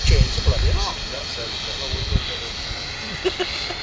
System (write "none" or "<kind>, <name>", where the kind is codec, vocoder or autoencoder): none